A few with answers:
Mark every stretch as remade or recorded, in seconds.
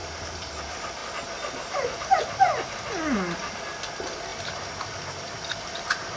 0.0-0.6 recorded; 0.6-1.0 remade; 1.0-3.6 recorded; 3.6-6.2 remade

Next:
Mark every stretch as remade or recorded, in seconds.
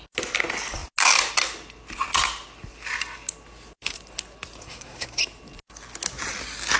0.0-4.6 recorded; 4.6-5.2 remade; 5.2-6.8 recorded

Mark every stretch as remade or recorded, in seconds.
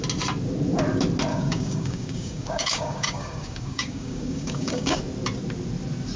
0.0-1.3 recorded; 1.3-5.0 remade; 5.0-6.2 recorded